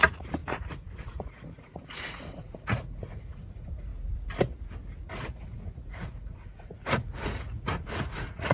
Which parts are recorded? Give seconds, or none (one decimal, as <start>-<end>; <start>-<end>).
3.9-5.1